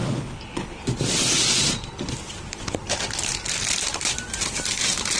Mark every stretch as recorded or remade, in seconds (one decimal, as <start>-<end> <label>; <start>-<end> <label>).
0.0-0.8 remade; 0.8-5.2 recorded

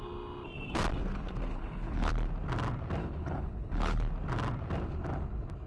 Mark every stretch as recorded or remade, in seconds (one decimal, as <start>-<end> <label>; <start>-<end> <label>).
0.0-1.5 recorded; 1.5-2.1 remade; 2.1-3.0 recorded; 3.0-4.1 remade; 4.1-5.7 recorded

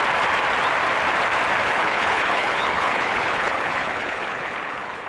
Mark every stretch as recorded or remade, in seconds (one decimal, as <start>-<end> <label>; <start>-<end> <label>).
0.0-1.6 recorded; 1.6-5.1 remade

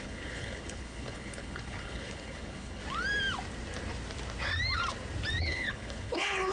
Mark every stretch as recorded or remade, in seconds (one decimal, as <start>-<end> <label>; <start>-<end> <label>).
0.0-2.8 remade; 2.8-5.4 recorded; 5.4-6.5 remade

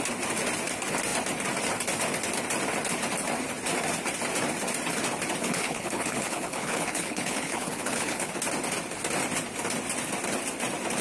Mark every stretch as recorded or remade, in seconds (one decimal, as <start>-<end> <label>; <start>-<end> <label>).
0.0-5.4 recorded; 5.4-8.3 remade; 8.3-11.0 recorded

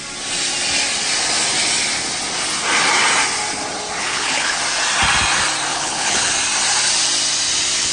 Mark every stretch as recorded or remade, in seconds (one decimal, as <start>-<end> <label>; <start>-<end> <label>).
0.0-4.0 recorded; 4.0-4.6 remade; 4.6-5.7 recorded; 5.7-6.3 remade; 6.3-7.9 recorded